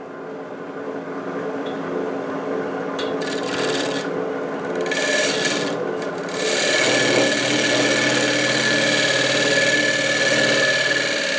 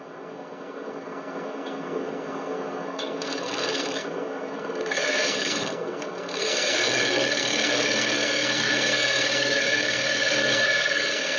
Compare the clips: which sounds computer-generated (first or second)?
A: second